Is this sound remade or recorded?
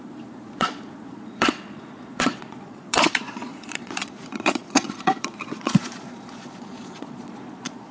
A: remade